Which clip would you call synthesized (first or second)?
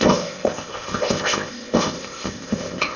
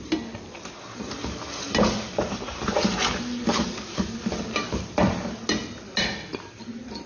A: first